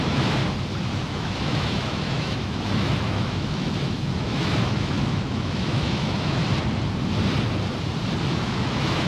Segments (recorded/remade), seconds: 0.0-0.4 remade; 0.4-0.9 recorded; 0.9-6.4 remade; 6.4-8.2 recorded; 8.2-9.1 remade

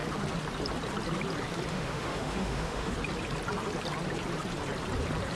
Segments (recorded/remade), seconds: 0.0-1.7 recorded; 1.7-2.9 remade; 2.9-5.3 recorded

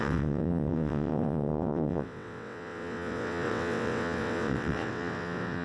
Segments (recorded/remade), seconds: 0.0-5.6 remade

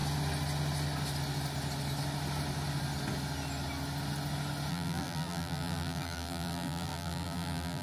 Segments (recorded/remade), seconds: 0.0-4.7 recorded; 4.7-7.8 remade

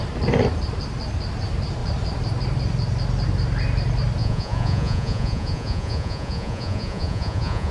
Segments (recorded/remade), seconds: 0.0-4.2 recorded; 4.2-7.7 remade

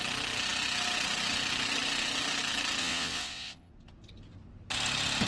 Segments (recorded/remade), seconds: 0.0-2.8 recorded; 2.8-3.7 remade; 3.7-5.3 recorded

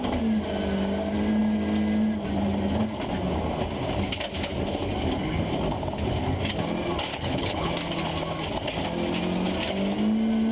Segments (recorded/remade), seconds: 0.0-7.1 recorded; 7.1-7.7 remade; 7.7-10.5 recorded